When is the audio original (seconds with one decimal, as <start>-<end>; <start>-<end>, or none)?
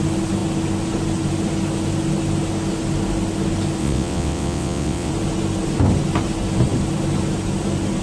0.0-3.8; 5.1-8.0